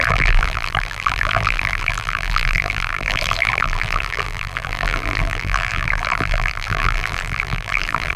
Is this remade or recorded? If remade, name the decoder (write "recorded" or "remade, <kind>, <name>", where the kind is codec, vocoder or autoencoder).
remade, vocoder, BigVGAN v2